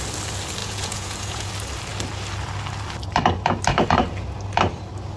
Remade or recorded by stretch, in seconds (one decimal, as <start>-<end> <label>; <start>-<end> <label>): 0.0-0.6 recorded; 0.6-1.5 remade; 1.5-5.2 recorded